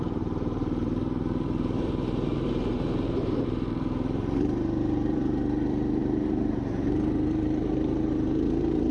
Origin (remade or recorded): remade